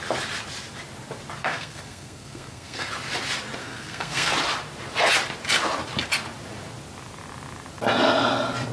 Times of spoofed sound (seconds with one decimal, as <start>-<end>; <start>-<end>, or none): 1.4-2.9; 3.6-4.3